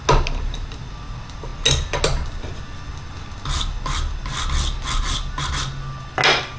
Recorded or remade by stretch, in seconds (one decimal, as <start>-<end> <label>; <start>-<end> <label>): 0.0-6.6 recorded